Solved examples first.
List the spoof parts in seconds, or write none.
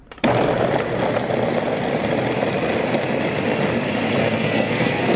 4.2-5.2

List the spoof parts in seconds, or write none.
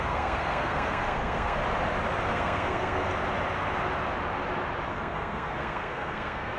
0.0-1.6; 2.3-3.1; 4.9-6.6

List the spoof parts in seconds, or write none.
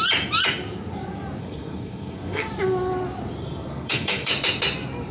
1.4-2.5; 3.4-4.3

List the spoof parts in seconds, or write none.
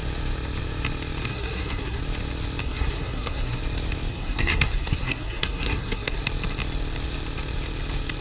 1.3-2.0; 2.6-3.6; 4.1-6.2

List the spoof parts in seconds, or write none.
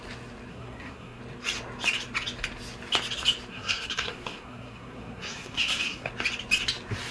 0.5-1.2; 3.5-6.1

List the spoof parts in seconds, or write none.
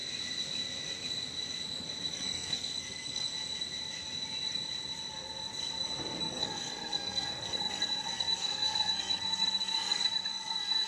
2.1-3.3; 6.2-10.9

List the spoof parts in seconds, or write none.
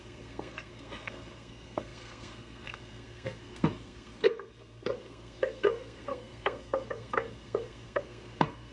0.0-8.7